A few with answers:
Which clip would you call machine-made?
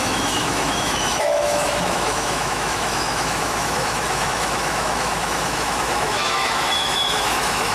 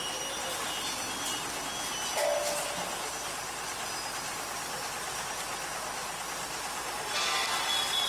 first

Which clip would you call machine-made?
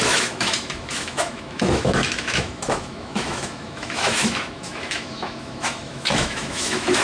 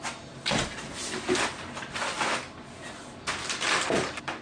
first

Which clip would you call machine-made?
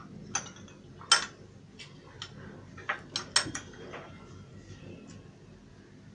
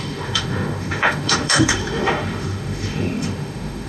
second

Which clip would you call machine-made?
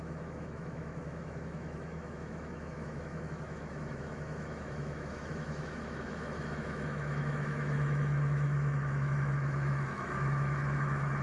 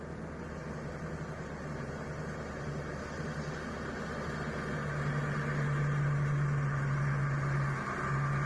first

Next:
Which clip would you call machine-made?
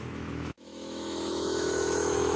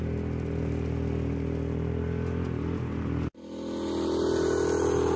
first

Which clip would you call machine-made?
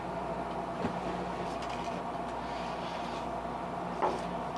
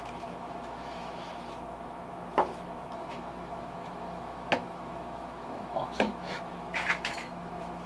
second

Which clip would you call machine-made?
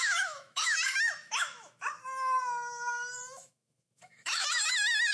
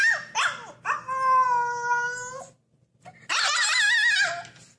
first